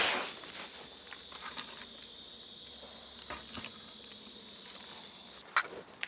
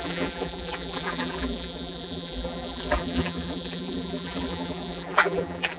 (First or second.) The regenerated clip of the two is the second